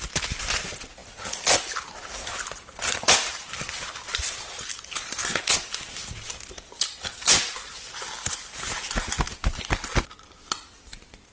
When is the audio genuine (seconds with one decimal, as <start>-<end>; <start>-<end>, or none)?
0.0-11.3